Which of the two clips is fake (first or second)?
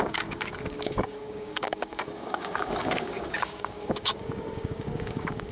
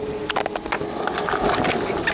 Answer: first